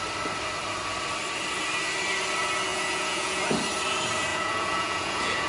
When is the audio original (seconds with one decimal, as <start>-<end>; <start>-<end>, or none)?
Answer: 0.0-2.7; 3.4-4.3